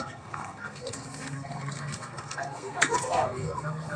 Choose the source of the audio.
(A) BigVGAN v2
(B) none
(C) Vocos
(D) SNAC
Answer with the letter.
D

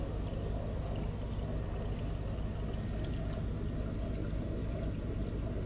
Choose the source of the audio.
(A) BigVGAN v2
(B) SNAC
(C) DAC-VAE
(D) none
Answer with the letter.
D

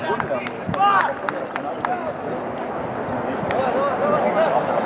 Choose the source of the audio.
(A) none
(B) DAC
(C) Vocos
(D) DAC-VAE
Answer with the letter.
A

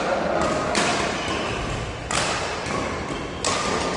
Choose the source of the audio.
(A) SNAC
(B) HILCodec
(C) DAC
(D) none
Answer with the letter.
D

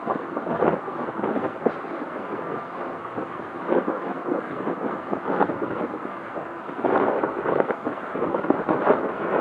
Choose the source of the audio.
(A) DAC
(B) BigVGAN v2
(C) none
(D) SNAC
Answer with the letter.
D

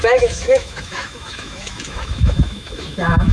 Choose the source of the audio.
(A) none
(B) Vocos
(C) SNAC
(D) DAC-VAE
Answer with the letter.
D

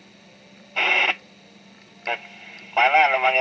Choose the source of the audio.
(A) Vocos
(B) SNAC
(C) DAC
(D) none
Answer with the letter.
D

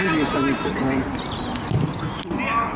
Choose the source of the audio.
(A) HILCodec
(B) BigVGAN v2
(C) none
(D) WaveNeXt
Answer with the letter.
C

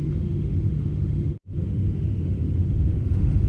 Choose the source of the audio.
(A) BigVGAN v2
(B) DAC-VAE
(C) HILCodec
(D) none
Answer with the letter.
B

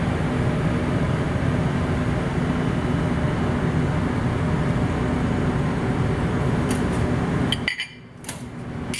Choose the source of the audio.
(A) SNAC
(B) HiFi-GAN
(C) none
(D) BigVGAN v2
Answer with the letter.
C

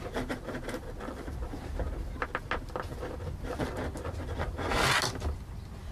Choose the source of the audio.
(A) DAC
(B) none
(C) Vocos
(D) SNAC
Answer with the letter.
B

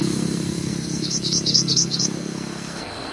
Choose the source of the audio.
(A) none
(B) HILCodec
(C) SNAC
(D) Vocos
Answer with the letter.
C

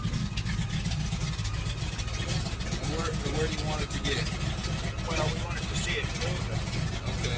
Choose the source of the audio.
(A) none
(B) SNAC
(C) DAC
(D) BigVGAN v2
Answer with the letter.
A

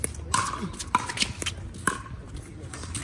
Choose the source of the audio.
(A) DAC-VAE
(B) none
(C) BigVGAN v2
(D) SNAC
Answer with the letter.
B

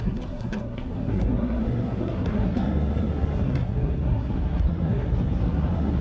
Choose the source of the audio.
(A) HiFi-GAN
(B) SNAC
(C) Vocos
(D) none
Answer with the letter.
B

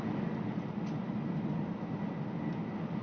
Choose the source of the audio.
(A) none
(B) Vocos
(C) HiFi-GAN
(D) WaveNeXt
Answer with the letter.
A